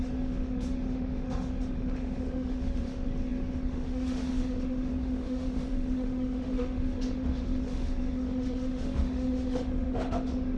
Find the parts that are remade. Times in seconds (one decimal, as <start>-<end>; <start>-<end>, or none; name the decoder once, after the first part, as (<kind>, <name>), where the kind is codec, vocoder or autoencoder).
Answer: 0.0-10.6 (autoencoder, DAC-VAE)

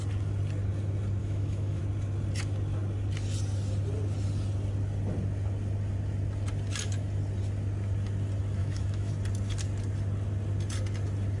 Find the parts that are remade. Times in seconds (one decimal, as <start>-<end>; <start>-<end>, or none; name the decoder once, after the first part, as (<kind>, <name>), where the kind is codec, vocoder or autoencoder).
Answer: 1.2-1.8 (autoencoder, DAC-VAE); 8.6-9.1

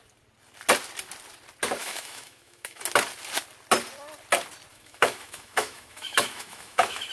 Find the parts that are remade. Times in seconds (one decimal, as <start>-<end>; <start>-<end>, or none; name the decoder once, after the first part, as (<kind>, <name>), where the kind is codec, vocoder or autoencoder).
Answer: 1.8-2.8 (autoencoder, DAC-VAE); 4.7-7.1

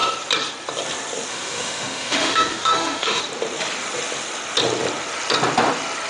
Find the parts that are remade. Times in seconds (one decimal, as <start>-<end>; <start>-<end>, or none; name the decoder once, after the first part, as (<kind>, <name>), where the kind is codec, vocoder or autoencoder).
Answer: 1.3-3.2 (autoencoder, DAC-VAE)